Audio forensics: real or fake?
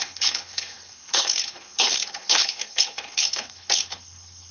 fake